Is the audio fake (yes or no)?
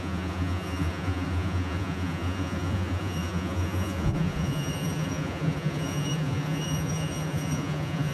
yes